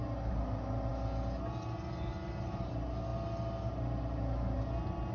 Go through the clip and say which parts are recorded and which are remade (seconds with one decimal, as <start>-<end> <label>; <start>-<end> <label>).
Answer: 0.0-5.1 recorded